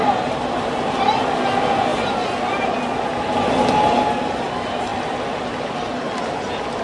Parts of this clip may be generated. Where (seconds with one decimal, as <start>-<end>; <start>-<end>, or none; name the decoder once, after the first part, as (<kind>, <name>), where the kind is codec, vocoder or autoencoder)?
none